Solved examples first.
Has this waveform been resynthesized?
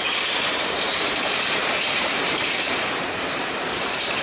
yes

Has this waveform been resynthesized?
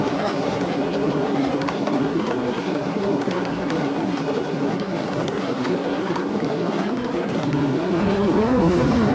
yes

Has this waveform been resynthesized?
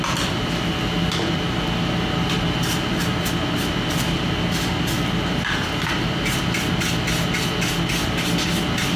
no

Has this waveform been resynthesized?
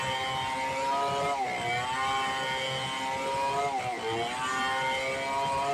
no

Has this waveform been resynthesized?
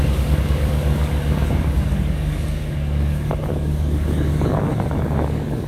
yes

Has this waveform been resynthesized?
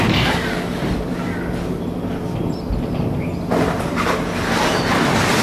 no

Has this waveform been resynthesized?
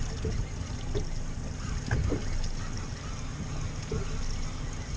no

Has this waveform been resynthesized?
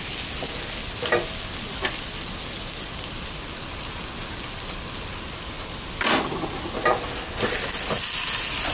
no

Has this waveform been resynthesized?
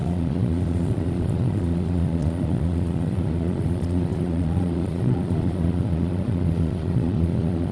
yes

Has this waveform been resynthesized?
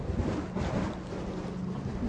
no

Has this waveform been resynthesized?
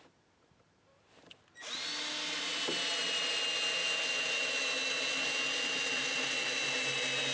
no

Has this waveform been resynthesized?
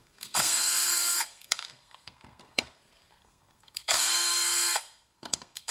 yes